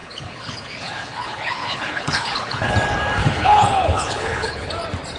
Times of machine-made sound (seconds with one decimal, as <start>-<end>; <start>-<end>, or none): 0.0-2.7; 3.2-4.7